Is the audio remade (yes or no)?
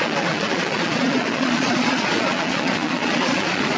yes